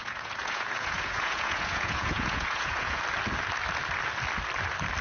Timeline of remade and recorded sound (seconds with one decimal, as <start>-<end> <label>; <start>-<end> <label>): 0.0-3.0 remade; 3.0-5.0 recorded